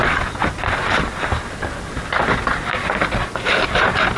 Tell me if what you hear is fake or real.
real